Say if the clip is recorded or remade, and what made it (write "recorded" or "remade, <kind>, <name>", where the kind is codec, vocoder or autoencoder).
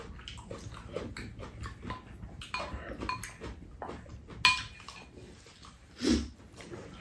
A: recorded